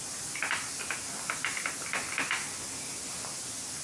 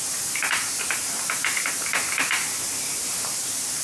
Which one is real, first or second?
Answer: first